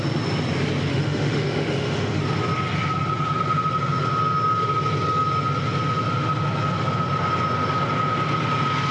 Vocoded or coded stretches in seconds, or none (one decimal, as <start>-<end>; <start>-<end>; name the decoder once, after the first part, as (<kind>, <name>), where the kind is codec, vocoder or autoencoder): 0.9-2.2 (autoencoder, DAC-VAE)